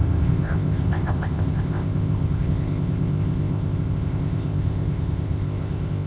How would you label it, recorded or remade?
remade